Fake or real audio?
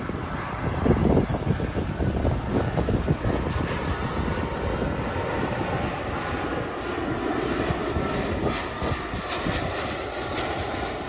real